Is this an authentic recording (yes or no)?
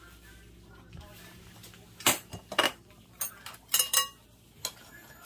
yes